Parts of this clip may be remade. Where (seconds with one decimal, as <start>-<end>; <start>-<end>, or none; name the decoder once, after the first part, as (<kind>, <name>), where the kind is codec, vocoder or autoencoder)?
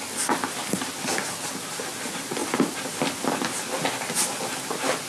2.4-3.3 (vocoder, BigVGAN v2)